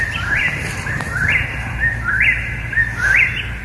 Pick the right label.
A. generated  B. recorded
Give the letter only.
B